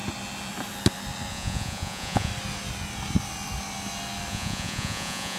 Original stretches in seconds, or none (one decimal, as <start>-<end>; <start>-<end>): 0.0-1.3; 2.3-4.3